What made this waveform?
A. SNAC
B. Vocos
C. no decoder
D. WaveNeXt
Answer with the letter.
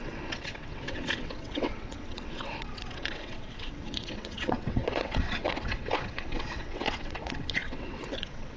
D